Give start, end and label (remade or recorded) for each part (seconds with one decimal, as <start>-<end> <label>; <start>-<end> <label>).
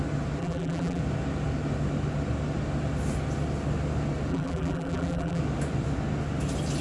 0.0-0.4 recorded; 0.4-1.0 remade; 1.0-4.3 recorded; 4.3-5.4 remade; 5.4-6.8 recorded